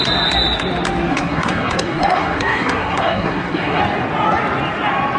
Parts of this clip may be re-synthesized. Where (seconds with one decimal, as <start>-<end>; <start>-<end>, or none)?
1.1-3.8